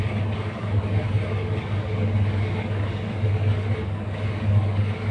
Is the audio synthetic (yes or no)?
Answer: yes